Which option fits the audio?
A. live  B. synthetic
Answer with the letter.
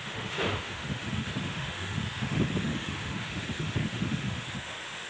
B